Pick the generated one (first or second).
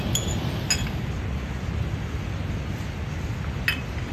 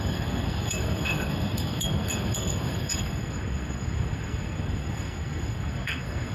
second